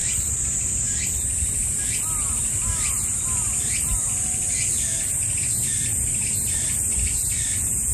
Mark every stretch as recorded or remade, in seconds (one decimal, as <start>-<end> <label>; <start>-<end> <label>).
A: 0.0-7.9 recorded